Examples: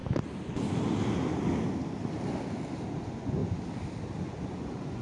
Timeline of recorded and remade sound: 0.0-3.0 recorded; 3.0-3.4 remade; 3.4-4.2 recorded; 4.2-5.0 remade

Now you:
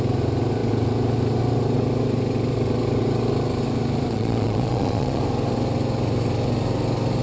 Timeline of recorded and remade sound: 0.0-4.1 recorded; 4.1-5.2 remade; 5.2-7.2 recorded

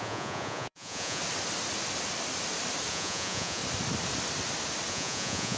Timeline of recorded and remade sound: 0.0-1.2 remade; 1.2-2.9 recorded; 2.9-3.6 remade; 3.6-4.9 recorded; 4.9-5.6 remade